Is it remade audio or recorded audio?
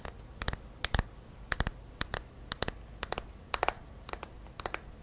recorded